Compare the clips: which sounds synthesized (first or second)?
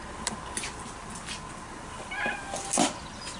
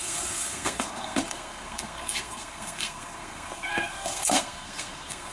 second